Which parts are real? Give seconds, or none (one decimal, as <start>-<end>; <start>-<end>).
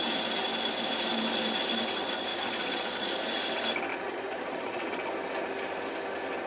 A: 0.0-2.3; 3.1-3.9; 5.1-6.5